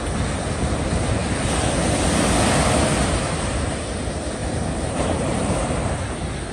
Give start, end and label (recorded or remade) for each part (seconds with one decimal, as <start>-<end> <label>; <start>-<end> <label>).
0.0-4.4 recorded; 4.4-5.9 remade; 5.9-6.5 recorded